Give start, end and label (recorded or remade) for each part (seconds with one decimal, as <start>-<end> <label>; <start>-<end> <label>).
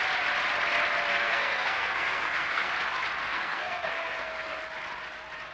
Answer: 0.0-1.1 recorded; 1.1-2.7 remade; 2.7-3.2 recorded; 3.2-4.6 remade; 4.6-5.5 recorded